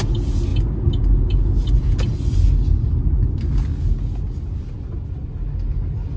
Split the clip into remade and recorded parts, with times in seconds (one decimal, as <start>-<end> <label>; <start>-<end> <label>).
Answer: 0.0-6.2 recorded